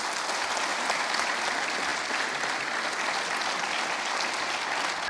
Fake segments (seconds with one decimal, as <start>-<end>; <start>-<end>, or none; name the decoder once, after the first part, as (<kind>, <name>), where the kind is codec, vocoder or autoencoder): 0.7-1.4 (vocoder, BigVGAN v2)